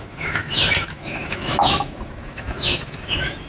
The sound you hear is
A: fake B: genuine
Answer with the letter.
A